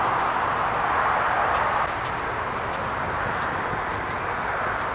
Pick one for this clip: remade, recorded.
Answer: recorded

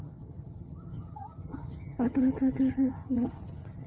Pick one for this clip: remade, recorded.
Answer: remade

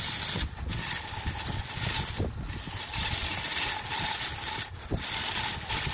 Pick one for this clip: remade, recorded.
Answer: recorded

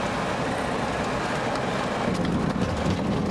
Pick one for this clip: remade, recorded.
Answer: recorded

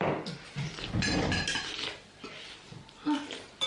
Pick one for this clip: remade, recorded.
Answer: recorded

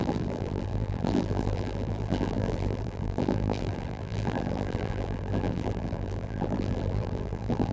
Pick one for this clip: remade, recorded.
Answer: remade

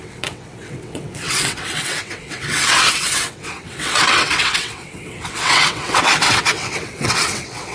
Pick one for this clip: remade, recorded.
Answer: remade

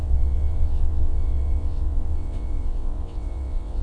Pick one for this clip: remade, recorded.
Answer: remade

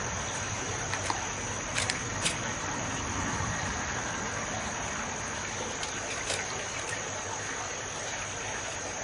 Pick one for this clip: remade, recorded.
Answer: remade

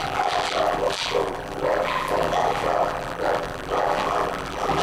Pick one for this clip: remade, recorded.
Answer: remade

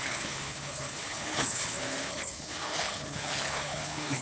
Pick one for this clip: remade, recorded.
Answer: remade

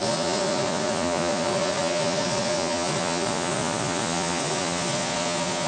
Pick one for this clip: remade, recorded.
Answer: remade